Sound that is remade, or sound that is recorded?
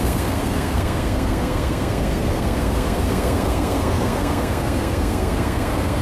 remade